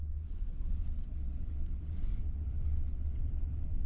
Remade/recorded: remade